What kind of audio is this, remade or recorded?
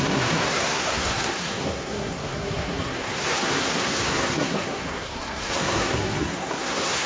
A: remade